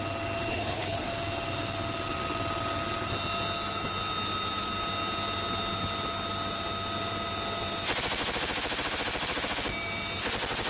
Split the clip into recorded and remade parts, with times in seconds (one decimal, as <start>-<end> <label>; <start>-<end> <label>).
0.0-0.5 recorded; 0.5-1.1 remade; 1.1-10.7 recorded